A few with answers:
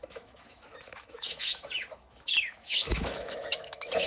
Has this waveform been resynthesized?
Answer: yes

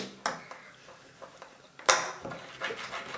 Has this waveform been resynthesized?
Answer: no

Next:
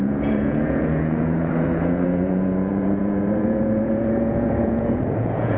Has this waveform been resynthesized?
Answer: yes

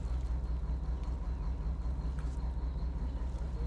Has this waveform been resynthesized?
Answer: no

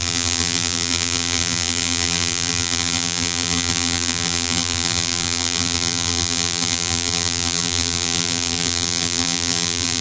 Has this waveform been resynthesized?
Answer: yes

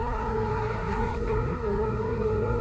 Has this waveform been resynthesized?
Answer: yes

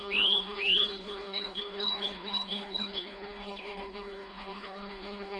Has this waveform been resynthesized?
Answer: yes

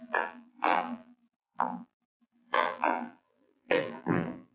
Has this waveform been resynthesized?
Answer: yes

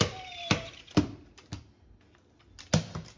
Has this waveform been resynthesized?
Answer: no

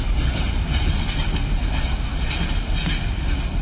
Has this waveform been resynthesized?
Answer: no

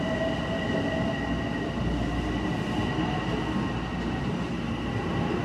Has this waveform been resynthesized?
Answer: no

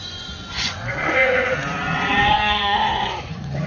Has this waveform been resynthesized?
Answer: yes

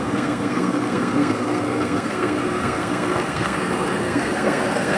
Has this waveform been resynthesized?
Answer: yes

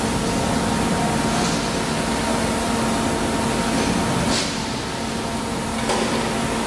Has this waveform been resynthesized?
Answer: no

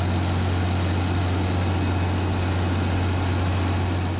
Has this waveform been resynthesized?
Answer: no